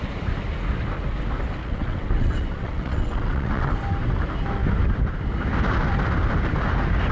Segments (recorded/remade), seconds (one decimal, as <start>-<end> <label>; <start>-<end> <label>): 0.0-1.6 recorded; 1.6-3.7 remade; 3.7-7.1 recorded